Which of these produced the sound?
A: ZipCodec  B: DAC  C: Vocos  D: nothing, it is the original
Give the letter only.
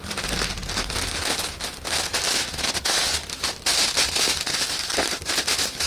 D